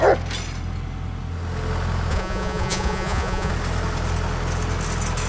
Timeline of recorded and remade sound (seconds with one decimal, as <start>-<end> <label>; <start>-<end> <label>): 0.0-2.1 recorded; 2.1-3.5 remade; 3.5-5.3 recorded